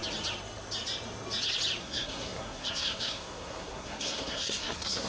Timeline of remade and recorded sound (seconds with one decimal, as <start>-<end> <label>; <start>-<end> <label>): 0.0-1.8 recorded; 1.8-5.1 remade